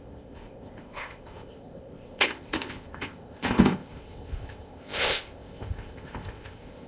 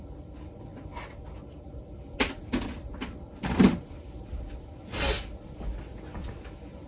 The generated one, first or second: first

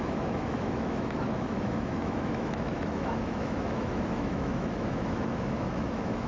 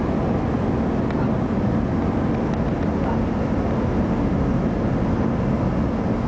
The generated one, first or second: first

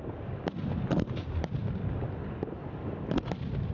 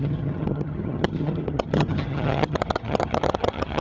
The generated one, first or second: second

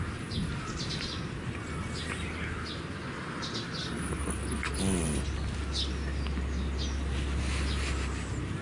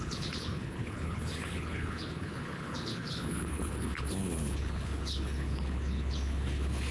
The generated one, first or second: second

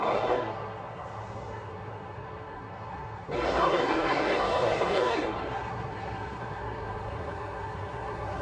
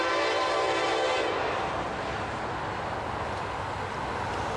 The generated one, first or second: first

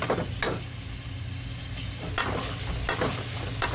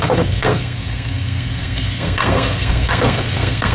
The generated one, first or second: second